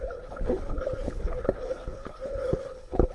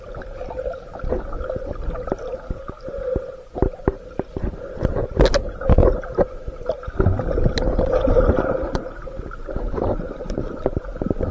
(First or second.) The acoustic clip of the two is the second